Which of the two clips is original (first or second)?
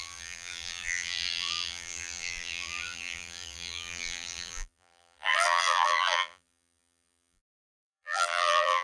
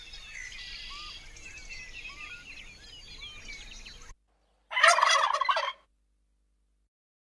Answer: second